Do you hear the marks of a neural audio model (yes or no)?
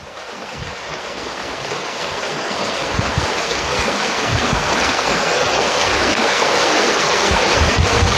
yes